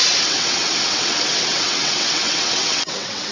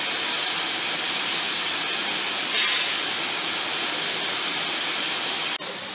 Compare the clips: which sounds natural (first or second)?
second